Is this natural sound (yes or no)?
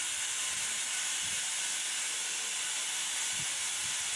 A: yes